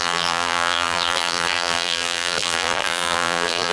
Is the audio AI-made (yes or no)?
yes